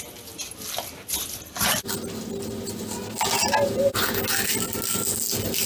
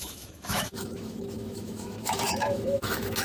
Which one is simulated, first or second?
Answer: second